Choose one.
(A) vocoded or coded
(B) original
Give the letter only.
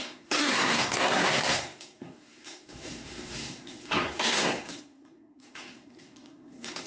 A